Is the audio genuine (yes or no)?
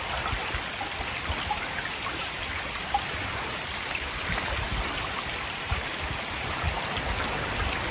yes